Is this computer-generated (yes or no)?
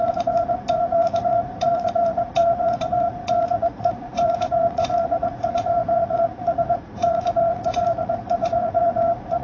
yes